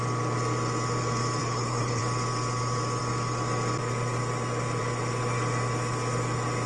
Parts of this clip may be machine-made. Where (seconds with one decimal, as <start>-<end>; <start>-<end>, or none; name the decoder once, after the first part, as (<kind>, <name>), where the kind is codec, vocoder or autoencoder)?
1.4-2.0 (codec, HILCodec)